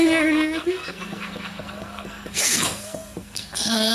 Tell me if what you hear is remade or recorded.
remade